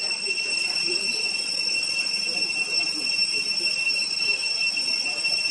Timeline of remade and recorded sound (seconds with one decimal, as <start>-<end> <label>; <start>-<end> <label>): 0.0-0.5 recorded; 0.5-2.1 remade; 2.1-5.5 recorded